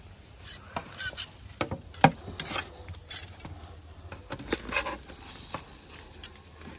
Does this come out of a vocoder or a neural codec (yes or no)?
no